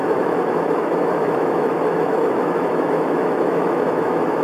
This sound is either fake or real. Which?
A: fake